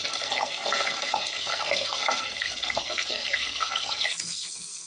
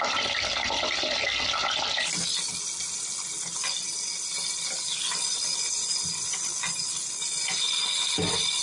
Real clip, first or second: second